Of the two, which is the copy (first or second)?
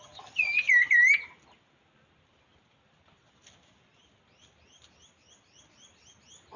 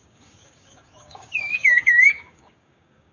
second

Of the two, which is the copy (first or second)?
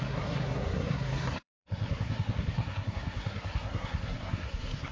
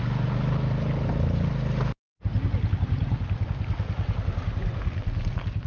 first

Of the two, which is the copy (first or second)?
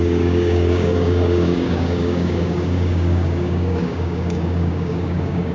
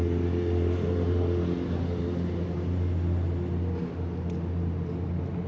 first